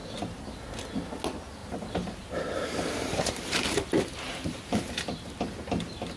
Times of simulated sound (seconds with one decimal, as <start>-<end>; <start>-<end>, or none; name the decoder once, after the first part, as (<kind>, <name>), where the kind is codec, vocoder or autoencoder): 1.6-5.3 (vocoder, BigVGAN v2)